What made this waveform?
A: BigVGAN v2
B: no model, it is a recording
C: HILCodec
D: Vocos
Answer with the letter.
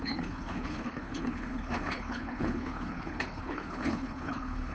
C